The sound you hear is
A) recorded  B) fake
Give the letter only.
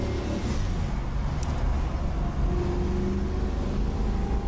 A